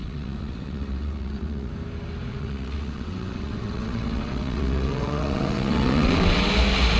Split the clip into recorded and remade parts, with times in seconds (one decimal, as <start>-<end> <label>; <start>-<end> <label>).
0.0-1.7 remade; 1.7-2.3 recorded; 2.3-6.5 remade; 6.5-7.0 recorded